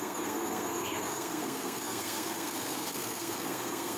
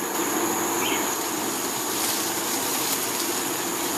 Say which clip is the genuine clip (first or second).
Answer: second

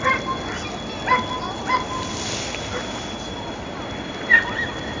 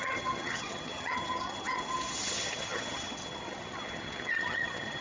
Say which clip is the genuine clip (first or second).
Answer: first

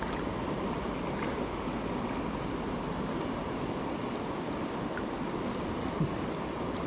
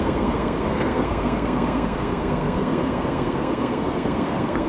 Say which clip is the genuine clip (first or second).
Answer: first